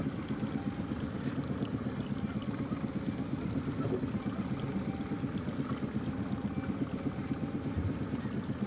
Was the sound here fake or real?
real